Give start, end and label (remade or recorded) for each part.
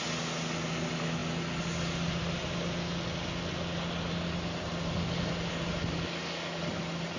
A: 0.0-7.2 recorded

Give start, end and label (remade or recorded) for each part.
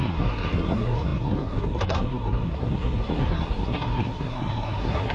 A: 0.0-5.1 remade